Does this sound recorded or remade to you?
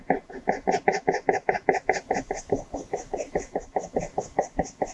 recorded